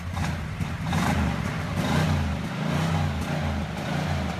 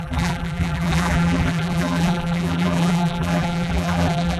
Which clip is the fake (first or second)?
second